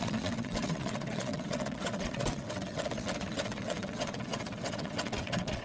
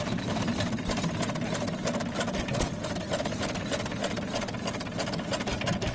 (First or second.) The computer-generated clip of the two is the first